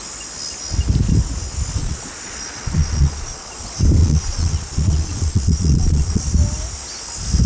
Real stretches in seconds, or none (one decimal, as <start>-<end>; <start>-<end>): 0.0-1.8; 3.6-4.0; 6.2-7.5

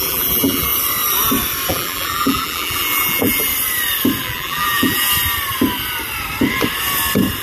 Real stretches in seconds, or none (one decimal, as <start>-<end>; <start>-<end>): 0.7-1.7; 3.5-4.2; 5.0-7.4

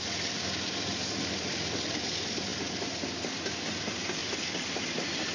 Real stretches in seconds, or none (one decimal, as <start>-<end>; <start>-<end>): 0.0-5.3

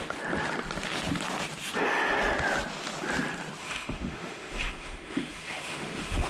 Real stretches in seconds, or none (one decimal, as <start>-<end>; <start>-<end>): 0.0-3.6

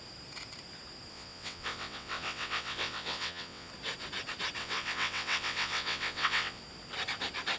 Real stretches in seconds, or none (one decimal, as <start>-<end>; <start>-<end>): 0.0-1.1; 3.7-4.6; 6.6-7.6

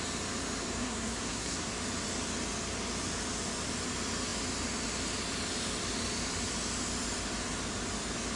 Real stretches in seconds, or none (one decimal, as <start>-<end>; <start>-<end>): 0.0-0.8; 1.7-8.4

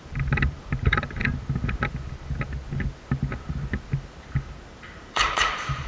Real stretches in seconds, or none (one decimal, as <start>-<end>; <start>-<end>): 1.2-4.7